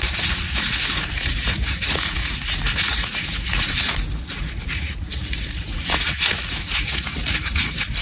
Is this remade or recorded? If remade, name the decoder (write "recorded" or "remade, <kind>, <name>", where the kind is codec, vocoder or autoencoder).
remade, vocoder, Vocos